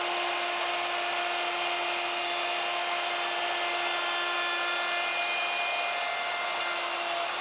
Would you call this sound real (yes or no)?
yes